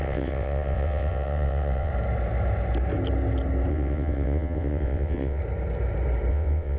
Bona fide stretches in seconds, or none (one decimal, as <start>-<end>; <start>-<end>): 1.9-3.7; 5.4-6.3